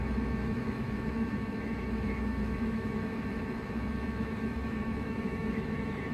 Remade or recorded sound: remade